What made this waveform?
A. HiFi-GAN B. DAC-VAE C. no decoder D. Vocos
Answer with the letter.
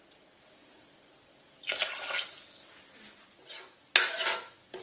C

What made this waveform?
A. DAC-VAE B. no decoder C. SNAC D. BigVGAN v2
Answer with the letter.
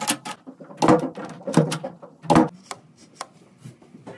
B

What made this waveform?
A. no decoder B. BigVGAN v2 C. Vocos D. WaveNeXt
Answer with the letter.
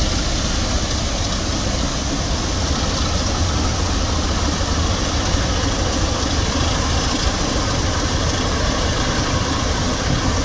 A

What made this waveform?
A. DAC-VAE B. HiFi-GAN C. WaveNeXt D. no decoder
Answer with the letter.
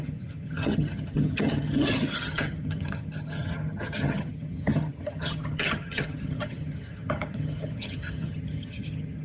B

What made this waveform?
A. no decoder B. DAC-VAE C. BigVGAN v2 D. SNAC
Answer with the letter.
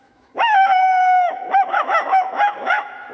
B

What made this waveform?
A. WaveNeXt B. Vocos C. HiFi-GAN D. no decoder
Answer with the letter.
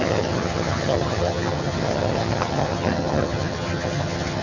C